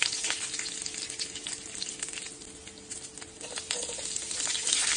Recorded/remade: recorded